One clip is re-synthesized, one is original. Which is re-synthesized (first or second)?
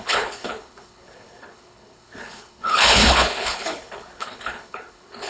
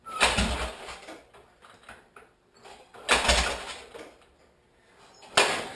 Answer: first